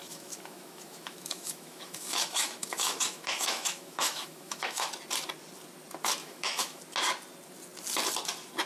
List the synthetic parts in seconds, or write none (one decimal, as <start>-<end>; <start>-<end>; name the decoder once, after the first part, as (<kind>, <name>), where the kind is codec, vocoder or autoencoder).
0.0-4.9 (autoencoder, DAC-VAE); 6.2-6.8